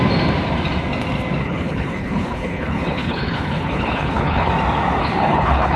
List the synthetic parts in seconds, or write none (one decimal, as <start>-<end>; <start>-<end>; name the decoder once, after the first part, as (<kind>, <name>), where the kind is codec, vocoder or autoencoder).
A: 1.4-4.5 (codec, HILCodec); 5.0-5.8